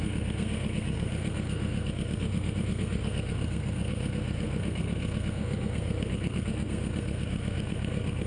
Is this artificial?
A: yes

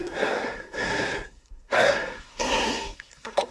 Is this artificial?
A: yes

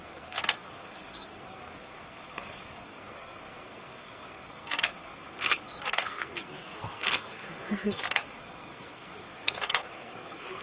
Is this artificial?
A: yes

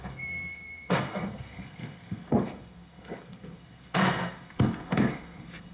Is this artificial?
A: yes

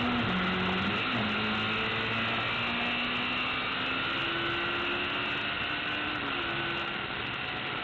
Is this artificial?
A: no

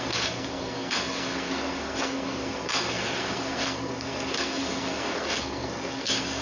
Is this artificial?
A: yes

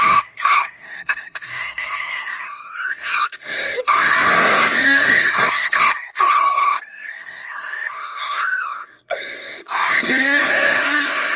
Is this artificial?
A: yes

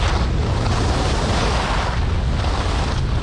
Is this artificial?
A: no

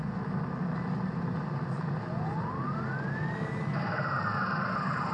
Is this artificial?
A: no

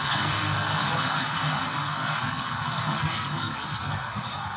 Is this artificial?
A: yes